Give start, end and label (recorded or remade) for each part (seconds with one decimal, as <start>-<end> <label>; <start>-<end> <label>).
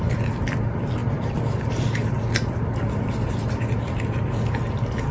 0.0-5.1 recorded